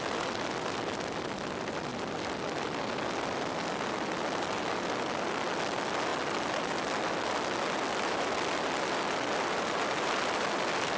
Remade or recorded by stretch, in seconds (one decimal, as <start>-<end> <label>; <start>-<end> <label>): 0.0-11.0 recorded

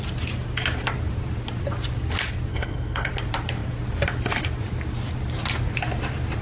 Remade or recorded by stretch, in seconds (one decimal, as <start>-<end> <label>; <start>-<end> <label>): 0.0-2.5 recorded; 2.5-3.1 remade; 3.1-6.4 recorded

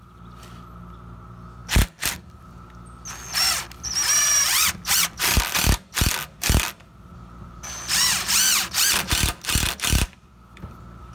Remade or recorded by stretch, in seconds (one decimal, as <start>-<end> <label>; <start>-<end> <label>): 0.0-11.1 recorded

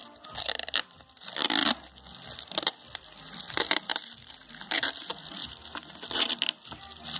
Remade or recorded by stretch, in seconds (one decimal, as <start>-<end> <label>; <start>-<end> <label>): 0.0-1.6 remade; 1.6-2.5 recorded; 2.5-7.2 remade

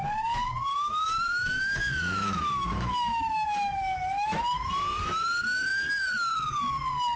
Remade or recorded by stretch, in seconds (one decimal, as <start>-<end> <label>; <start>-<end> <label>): 0.0-0.7 recorded; 0.7-4.4 remade; 4.4-7.2 recorded

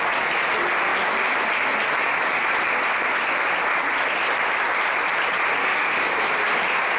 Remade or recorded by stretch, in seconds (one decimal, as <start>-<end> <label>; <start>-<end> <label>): 0.0-5.6 recorded; 5.6-6.3 remade; 6.3-7.0 recorded